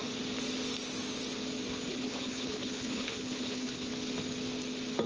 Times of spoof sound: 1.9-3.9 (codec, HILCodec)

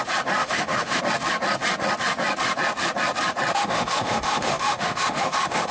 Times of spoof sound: 0.4-1.0 (autoencoder, DAC-VAE); 3.5-5.7

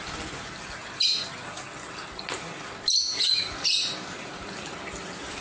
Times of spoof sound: 3.9-4.5 (vocoder, BigVGAN v2)

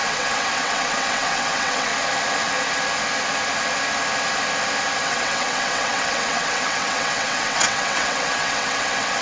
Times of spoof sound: 0.0-1.9 (vocoder, WaveNeXt); 5.0-9.2

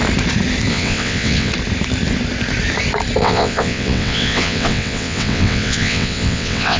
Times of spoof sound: 0.7-1.5 (vocoder, WaveNeXt); 3.2-6.8

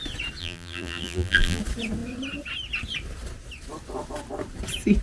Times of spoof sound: 0.4-1.6 (vocoder, BigVGAN v2)

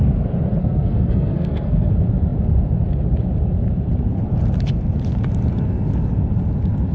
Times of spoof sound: 0.6-1.9 (codec, SNAC)